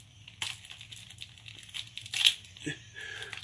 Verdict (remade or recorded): recorded